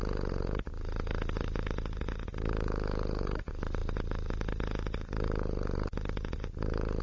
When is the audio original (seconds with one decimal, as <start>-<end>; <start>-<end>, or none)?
0.0-7.0